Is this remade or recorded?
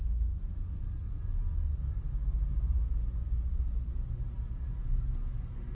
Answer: recorded